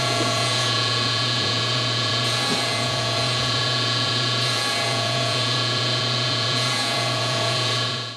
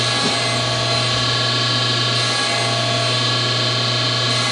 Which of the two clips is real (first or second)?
second